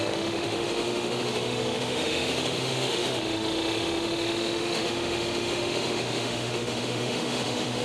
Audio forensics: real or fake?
fake